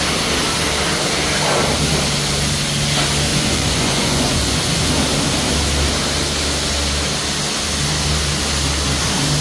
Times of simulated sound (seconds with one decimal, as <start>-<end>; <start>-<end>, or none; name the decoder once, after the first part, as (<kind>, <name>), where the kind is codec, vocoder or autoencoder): 3.3-4.9 (vocoder, Vocos)